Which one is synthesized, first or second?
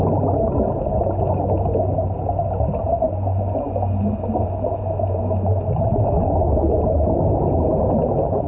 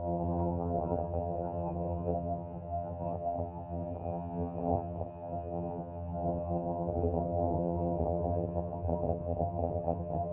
second